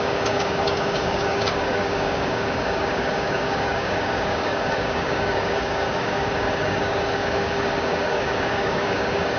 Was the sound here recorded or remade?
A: remade